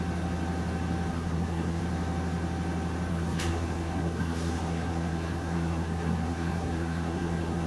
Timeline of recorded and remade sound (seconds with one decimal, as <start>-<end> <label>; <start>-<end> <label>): 0.0-1.1 recorded; 1.1-1.8 remade; 1.8-3.1 recorded; 3.1-7.7 remade